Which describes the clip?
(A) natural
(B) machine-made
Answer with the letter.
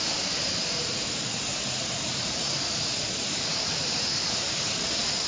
B